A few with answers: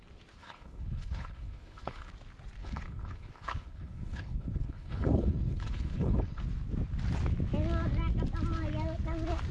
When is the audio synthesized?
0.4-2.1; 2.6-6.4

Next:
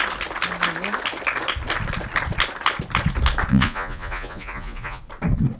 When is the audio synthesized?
3.5-5.0

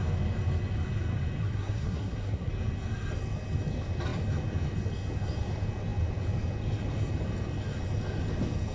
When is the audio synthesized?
1.4-2.5

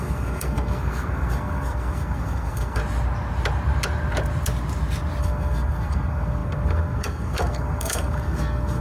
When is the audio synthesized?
0.0-2.8; 5.2-8.8

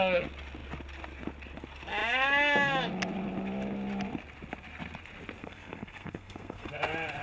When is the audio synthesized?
5.4-6.7

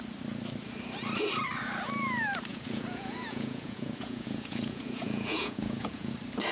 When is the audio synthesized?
2.5-6.1

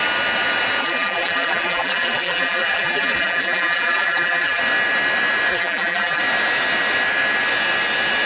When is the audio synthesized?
0.8-4.6; 5.5-6.2